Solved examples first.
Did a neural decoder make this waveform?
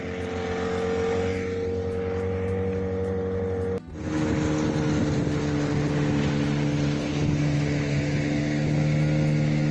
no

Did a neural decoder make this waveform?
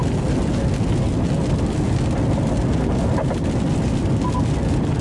no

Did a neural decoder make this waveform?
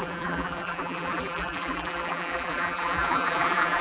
yes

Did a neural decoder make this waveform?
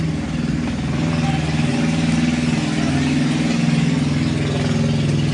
no